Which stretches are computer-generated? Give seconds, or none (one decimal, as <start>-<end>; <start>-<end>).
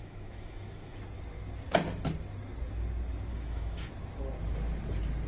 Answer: 0.0-1.0; 3.3-3.9